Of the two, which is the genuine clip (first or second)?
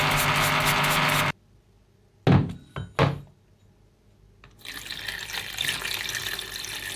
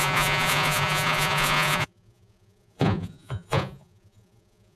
first